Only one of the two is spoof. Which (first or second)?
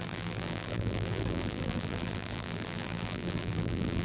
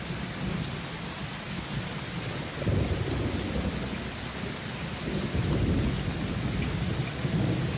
first